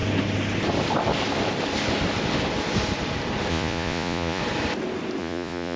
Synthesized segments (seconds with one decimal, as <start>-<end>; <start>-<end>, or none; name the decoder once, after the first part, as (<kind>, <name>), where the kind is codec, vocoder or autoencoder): 3.5-4.4 (vocoder, Vocos); 5.2-5.8